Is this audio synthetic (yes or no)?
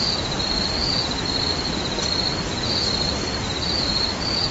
no